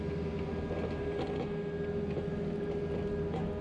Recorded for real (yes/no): yes